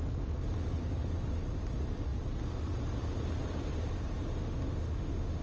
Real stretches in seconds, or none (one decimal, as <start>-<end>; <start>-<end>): 0.0-4.4